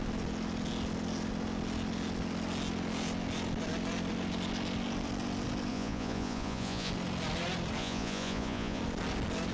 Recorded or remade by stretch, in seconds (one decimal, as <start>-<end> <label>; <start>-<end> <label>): 0.0-5.7 recorded; 5.7-6.9 remade; 6.9-7.8 recorded; 7.8-8.8 remade; 8.8-9.5 recorded